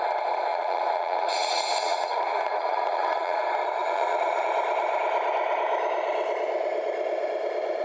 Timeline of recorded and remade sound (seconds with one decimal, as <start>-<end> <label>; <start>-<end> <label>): 0.0-0.5 recorded; 0.5-3.4 remade; 3.4-3.8 recorded; 3.8-4.5 remade; 4.5-7.8 recorded